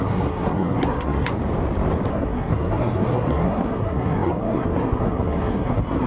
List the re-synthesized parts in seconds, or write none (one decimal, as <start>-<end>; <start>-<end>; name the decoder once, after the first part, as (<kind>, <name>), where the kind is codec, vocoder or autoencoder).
0.0-1.3 (codec, SNAC); 2.1-6.1